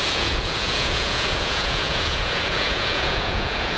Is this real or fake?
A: fake